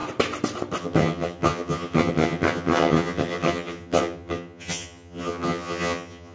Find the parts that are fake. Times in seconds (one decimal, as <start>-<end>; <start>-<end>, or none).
0.8-6.3